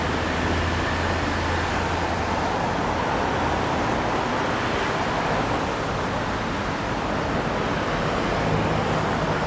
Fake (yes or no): no